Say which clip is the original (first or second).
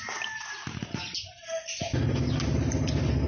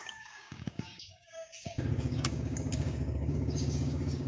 first